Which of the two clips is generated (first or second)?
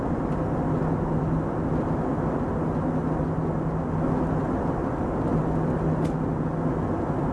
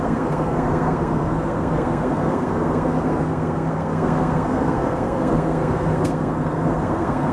second